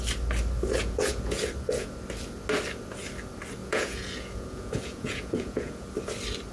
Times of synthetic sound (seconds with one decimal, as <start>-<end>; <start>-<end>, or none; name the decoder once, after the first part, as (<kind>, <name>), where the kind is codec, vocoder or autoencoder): 0.8-1.4 (vocoder, Vocos); 3.6-5.9